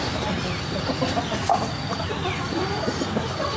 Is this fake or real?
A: real